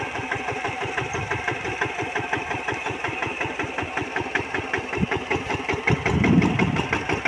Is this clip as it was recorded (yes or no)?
no